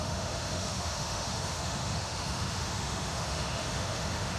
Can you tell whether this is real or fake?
fake